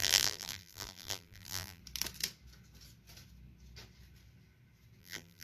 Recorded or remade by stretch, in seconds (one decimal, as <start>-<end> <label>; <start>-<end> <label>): 0.0-1.8 remade; 1.8-5.0 recorded; 5.0-5.4 remade

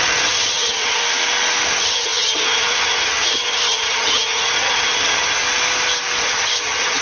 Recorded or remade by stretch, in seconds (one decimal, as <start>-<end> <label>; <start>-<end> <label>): 0.0-1.0 remade; 1.0-1.7 recorded; 1.7-5.4 remade; 5.4-6.2 recorded; 6.2-7.0 remade

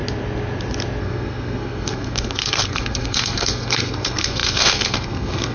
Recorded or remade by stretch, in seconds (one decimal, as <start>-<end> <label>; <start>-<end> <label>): 0.0-1.0 recorded; 1.0-5.5 remade

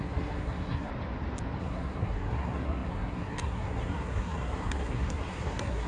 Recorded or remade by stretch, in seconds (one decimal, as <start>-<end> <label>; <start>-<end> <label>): 0.0-0.9 remade; 0.9-1.6 recorded; 1.6-5.9 remade